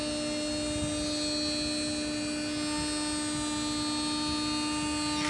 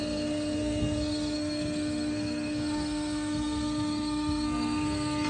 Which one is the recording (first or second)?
first